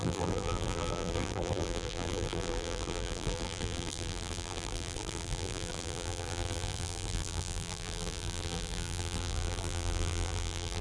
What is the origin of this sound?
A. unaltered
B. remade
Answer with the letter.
B